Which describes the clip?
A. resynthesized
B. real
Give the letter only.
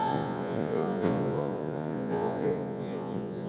A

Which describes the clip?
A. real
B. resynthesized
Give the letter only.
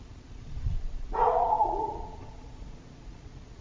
B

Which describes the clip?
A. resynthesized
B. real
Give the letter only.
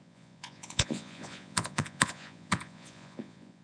A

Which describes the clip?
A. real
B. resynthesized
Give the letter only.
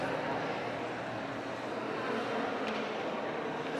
A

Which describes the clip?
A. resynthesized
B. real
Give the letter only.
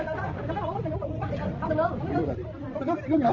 B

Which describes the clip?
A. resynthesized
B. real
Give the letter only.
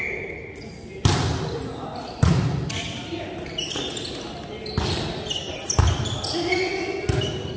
B